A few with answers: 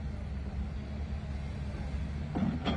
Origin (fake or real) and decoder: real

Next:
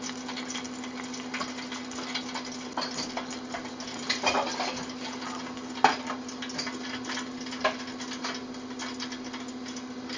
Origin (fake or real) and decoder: real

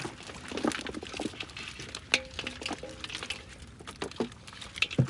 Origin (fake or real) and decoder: real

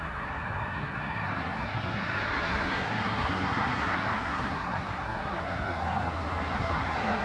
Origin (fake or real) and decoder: fake, codec, SNAC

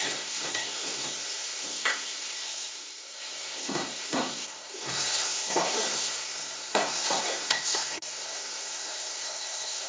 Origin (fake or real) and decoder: fake, codec, SNAC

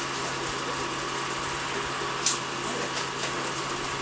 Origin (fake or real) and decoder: real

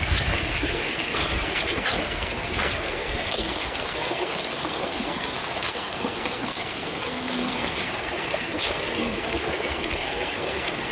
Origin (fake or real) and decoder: fake, codec, SNAC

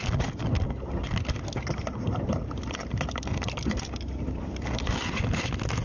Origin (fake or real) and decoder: real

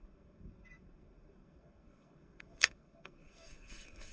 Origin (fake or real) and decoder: fake, codec, SNAC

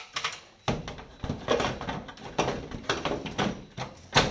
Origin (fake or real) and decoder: real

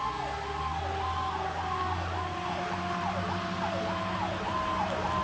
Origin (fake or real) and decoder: real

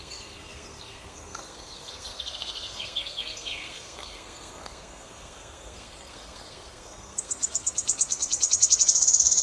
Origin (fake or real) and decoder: fake, codec, SNAC